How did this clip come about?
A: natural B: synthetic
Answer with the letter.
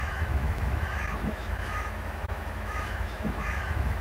B